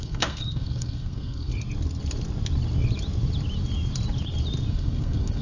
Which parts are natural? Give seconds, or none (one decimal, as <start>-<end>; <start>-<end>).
1.5-4.7